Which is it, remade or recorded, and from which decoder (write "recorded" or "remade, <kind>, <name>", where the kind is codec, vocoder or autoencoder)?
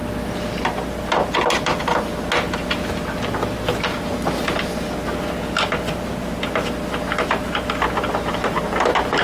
recorded